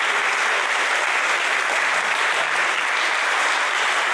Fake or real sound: real